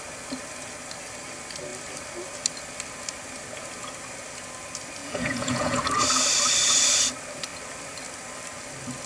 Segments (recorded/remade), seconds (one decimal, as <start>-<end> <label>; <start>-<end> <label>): 0.0-5.0 recorded; 5.0-5.8 remade; 5.8-9.1 recorded